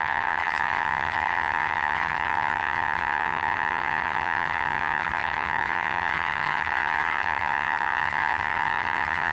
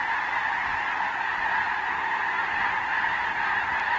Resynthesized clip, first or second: first